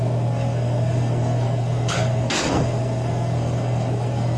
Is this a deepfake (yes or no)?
yes